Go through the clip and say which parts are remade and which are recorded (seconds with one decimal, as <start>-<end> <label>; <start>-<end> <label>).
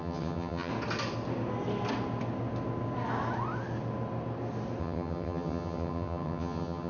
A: 0.0-0.7 remade; 0.7-4.8 recorded; 4.8-6.9 remade